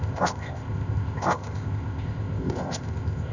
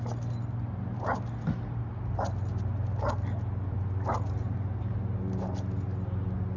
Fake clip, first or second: first